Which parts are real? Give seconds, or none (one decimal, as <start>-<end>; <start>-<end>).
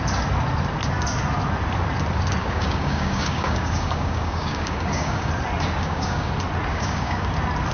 0.0-2.4; 5.3-5.8; 6.3-6.7; 7.3-7.7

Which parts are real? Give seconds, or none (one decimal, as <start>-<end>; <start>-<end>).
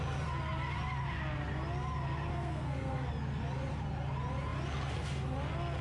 0.0-2.3; 3.1-5.8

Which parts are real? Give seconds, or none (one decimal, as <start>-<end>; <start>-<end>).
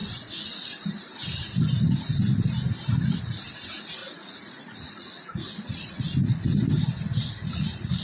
0.0-4.0; 6.0-7.4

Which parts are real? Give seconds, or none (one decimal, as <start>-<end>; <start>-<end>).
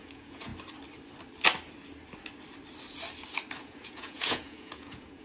0.5-3.6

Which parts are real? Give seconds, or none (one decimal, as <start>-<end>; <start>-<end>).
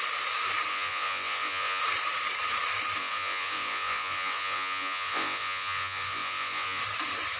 0.0-0.7; 1.8-3.0; 6.8-7.4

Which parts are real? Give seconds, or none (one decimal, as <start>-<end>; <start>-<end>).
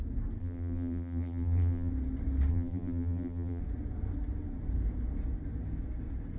0.0-0.4; 1.9-2.5; 3.6-6.4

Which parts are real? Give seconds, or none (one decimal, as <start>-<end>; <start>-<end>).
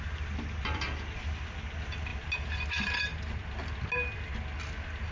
0.0-5.1